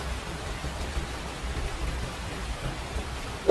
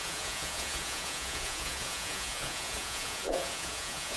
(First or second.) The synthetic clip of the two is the second